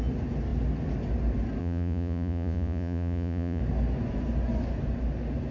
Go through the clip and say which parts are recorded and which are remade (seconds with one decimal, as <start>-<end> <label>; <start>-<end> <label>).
0.0-1.6 recorded; 1.6-3.6 remade; 3.6-5.5 recorded